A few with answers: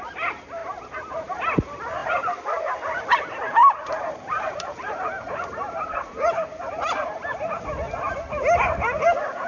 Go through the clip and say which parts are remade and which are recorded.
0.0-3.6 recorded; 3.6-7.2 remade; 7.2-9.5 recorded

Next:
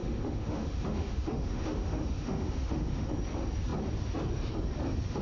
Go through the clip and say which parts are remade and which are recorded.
0.0-3.1 remade; 3.1-5.2 recorded

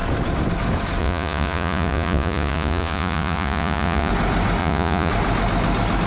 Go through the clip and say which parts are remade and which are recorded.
0.0-1.0 recorded; 1.0-4.1 remade; 4.1-4.6 recorded; 4.6-5.1 remade; 5.1-6.1 recorded

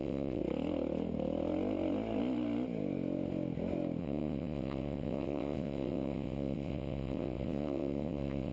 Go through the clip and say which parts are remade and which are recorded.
0.0-0.4 remade; 0.4-4.0 recorded; 4.0-8.5 remade

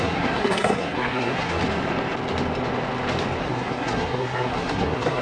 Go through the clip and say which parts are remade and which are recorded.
0.0-1.6 remade; 1.6-3.4 recorded; 3.4-5.2 remade

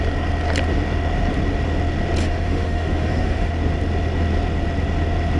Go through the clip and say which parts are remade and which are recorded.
0.0-2.2 recorded; 2.2-3.5 remade; 3.5-5.4 recorded